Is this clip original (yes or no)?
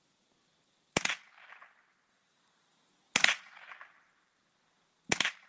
yes